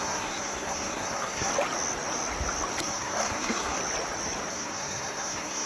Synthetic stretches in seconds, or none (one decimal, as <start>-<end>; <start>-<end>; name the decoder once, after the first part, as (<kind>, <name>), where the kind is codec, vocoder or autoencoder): 0.0-1.5 (codec, SNAC); 2.8-3.8; 4.5-5.7